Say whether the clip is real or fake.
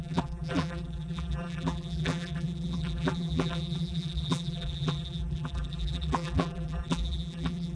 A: fake